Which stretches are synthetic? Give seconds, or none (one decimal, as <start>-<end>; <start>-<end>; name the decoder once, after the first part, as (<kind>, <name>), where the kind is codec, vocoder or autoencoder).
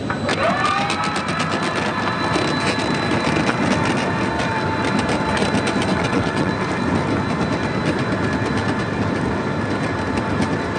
5.9-6.5 (vocoder, WaveNeXt)